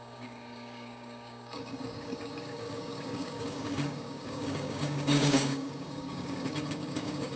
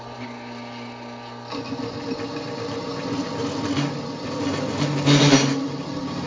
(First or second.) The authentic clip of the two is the second